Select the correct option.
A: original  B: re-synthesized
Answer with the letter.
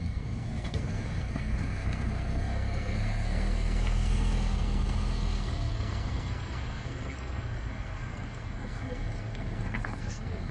B